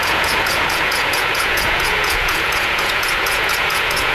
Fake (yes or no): yes